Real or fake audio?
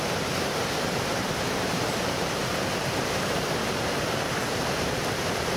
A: fake